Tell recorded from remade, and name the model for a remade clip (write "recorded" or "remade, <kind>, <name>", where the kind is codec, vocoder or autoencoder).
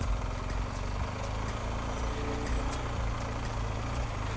recorded